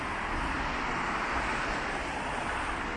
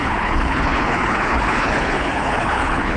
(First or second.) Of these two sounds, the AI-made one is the second